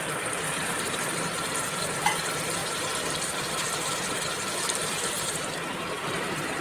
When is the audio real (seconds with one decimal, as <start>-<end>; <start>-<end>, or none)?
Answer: none